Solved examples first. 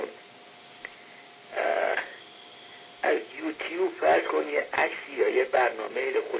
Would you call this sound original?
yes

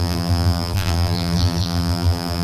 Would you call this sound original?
no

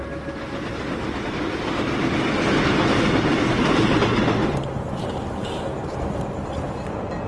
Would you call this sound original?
yes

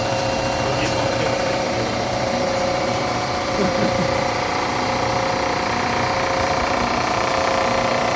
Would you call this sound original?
no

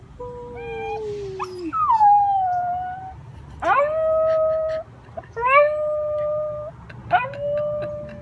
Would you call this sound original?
yes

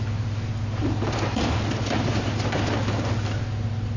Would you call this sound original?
yes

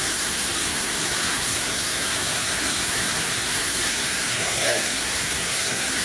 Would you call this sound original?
no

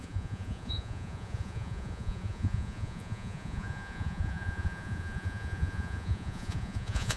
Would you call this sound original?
no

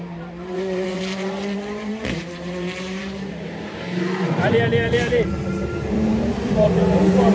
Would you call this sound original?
no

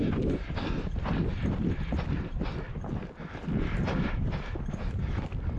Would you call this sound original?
yes